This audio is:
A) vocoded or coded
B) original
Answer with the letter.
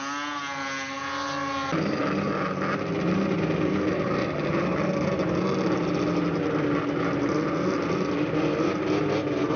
B